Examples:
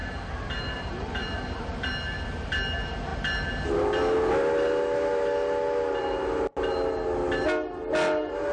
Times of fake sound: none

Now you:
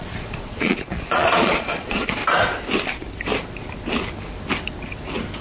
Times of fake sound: 0.0-2.2 (vocoder, Vocos)

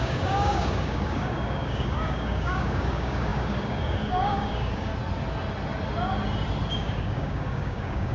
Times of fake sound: 0.0-4.9 (codec, DAC); 6.7-8.1